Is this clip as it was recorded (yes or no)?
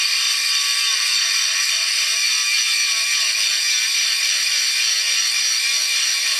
yes